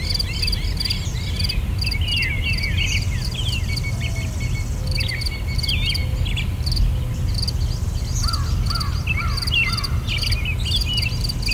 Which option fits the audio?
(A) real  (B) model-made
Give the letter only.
A